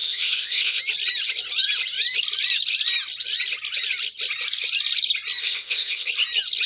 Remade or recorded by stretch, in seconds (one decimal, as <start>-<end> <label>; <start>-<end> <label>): 0.0-0.8 remade; 0.8-5.4 recorded; 5.4-6.1 remade; 6.1-6.7 recorded